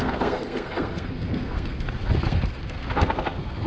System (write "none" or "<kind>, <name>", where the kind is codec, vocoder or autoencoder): codec, SNAC